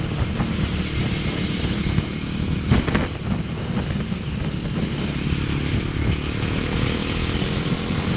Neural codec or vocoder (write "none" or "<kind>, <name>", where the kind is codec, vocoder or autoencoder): none